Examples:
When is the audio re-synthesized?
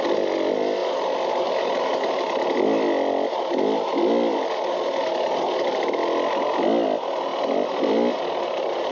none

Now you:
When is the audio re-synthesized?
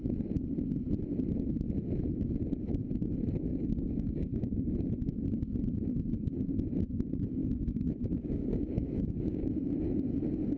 3.5-4.7 (codec, DAC); 7.4-9.5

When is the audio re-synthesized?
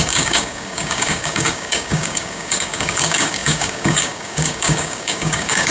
0.0-5.7 (codec, DAC)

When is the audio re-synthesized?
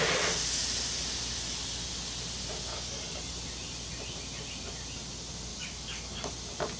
2.7-3.3 (codec, DAC); 5.5-6.3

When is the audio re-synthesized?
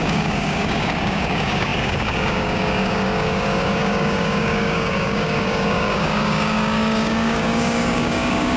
0.0-8.6 (codec, DAC)